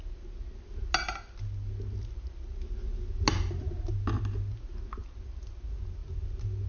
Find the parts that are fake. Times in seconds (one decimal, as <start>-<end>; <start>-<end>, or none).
none